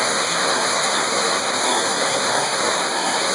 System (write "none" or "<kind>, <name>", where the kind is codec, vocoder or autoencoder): codec, SNAC